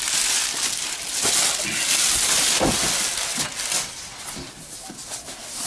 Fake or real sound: real